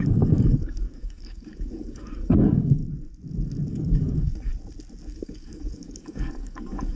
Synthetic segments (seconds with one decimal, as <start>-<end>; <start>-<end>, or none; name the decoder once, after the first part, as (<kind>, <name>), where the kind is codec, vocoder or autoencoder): 0.0-2.8 (codec, DAC); 3.7-4.5; 5.1-7.0